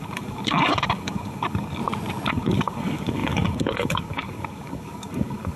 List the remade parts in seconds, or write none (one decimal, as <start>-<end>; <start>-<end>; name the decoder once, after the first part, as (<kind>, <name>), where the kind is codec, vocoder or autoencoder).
0.0-1.8 (codec, DAC); 2.3-5.6